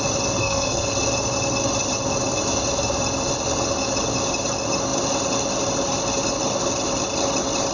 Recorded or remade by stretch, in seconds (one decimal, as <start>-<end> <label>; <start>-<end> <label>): 0.0-0.4 recorded; 0.4-0.9 remade; 0.9-7.7 recorded